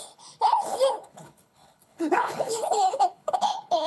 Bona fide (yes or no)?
no